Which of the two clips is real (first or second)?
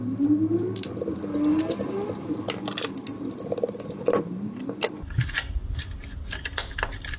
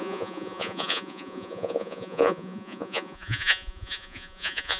first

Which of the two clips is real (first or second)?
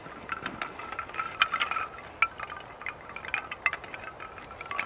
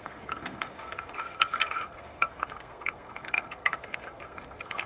first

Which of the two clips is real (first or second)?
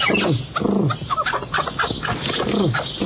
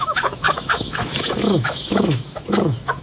first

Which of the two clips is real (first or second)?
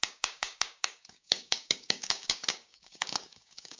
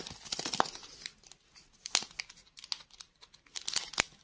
second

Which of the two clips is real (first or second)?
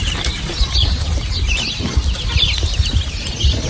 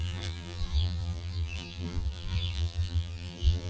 first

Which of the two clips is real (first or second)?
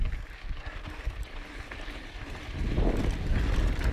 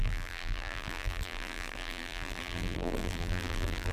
first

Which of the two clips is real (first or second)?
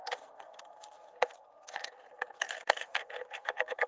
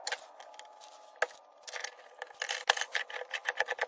second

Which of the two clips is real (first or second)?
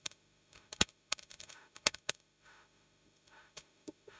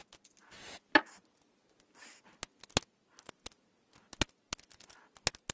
second